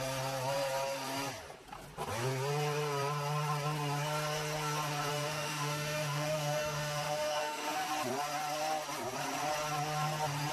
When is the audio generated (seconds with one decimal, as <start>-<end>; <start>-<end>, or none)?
5.1-7.9